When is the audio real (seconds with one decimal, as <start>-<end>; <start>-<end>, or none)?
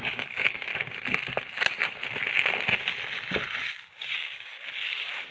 0.7-3.9